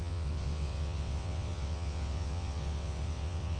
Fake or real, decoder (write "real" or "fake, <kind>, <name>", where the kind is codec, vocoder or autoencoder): fake, vocoder, WaveNeXt